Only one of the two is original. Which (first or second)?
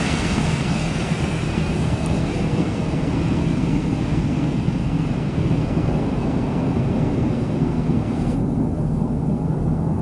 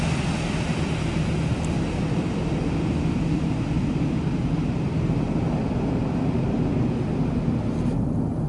second